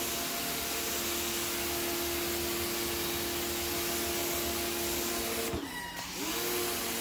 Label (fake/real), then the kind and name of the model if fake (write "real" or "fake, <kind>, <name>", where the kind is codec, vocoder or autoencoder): real